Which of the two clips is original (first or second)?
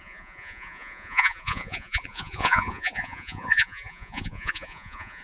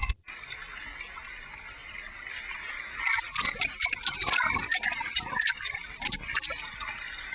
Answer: second